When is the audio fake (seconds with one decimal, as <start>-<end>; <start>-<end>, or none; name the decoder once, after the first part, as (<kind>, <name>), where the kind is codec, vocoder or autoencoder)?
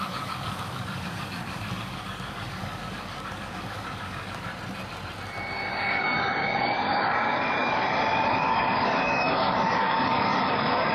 0.0-4.5 (codec, DAC); 5.7-10.9